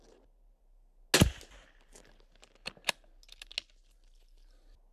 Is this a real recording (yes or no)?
yes